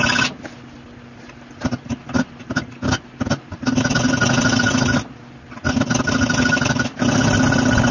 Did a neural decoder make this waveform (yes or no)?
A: no